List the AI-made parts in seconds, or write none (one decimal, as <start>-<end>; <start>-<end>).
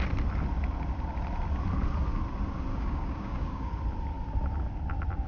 2.7-3.8